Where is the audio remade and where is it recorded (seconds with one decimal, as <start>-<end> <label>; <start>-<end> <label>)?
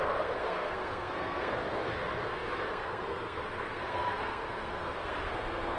0.0-5.8 remade